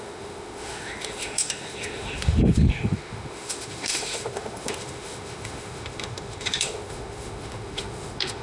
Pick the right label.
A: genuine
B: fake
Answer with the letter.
B